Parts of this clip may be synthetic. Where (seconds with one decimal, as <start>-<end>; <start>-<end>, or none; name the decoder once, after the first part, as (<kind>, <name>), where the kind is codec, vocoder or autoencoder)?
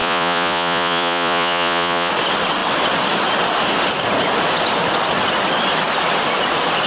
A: 0.0-2.1 (vocoder, Vocos)